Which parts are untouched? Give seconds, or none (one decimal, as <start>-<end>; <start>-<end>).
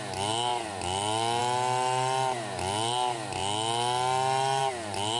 0.0-5.2